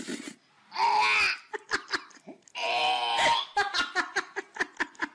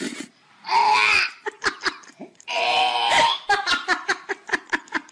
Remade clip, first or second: second